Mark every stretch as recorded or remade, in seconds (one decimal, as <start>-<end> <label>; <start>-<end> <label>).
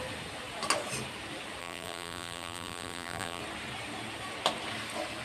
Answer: 0.0-1.6 recorded; 1.6-3.4 remade; 3.4-5.2 recorded